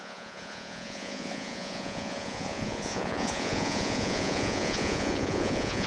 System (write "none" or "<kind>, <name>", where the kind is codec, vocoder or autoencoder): vocoder, Vocos